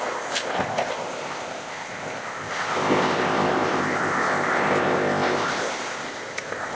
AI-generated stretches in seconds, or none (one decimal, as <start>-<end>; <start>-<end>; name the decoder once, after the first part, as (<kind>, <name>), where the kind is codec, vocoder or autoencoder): 0.0-6.7 (codec, ZipCodec)